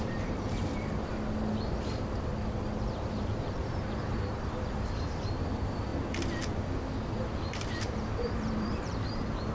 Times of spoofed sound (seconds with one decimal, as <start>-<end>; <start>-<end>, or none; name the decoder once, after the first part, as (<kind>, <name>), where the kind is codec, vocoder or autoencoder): 0.0-0.7 (vocoder, BigVGAN v2); 2.9-5.9; 7.1-9.5

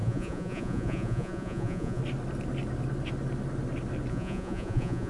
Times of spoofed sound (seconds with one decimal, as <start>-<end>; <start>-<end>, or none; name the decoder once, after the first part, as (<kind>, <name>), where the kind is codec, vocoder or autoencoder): 0.0-2.0 (vocoder, Vocos); 4.1-5.1

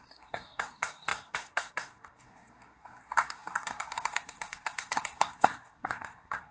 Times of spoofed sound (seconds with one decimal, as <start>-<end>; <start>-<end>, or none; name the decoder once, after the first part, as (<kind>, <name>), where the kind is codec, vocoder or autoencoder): 0.0-6.5 (codec, SNAC)

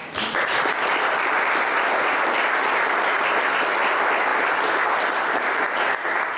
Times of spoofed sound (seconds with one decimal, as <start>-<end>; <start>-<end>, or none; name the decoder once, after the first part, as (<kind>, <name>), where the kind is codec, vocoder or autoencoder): none

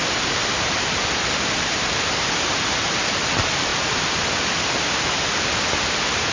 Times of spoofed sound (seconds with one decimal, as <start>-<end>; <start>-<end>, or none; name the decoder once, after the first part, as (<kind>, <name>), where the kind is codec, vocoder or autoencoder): none